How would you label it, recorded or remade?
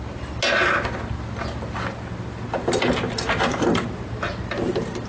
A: recorded